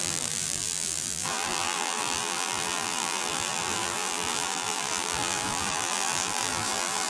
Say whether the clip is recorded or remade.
remade